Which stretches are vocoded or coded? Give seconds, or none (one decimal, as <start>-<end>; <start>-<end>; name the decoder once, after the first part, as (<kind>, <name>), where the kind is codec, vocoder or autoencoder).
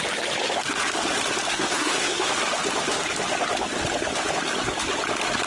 1.5-2.3 (codec, SNAC)